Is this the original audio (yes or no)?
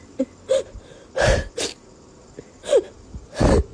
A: yes